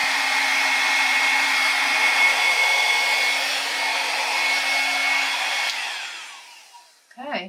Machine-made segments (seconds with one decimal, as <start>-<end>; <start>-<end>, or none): 0.0-2.9